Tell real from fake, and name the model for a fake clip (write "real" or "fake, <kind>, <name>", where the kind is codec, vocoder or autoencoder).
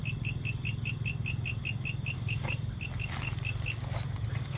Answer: real